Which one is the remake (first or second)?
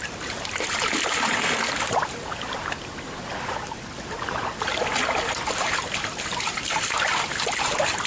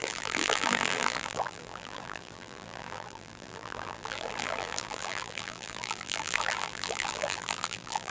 second